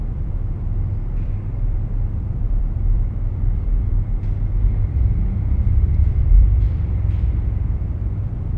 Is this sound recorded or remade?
remade